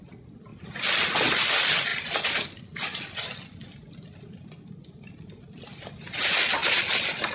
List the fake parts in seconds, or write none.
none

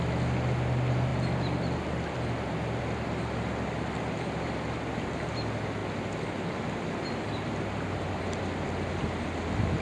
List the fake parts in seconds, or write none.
none